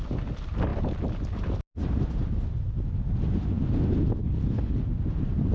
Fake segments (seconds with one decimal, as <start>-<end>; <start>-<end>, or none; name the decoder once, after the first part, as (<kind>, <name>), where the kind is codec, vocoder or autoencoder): 4.2-4.8 (codec, HILCodec)